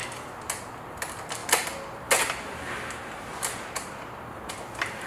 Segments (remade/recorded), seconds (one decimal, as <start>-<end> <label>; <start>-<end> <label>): 0.0-5.1 recorded